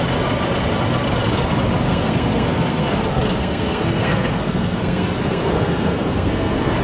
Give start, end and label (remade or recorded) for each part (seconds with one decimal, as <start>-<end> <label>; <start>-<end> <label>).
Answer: 0.0-1.9 recorded; 1.9-3.0 remade; 3.0-3.4 recorded; 3.4-6.8 remade